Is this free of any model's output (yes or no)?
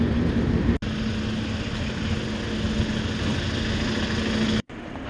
yes